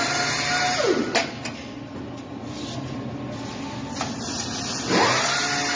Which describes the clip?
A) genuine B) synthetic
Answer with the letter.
A